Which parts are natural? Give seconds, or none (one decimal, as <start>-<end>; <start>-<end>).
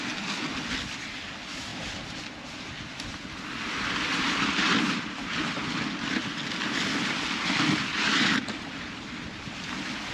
0.0-1.7; 2.2-10.1